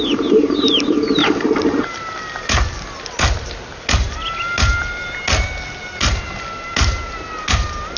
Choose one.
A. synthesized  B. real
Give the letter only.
B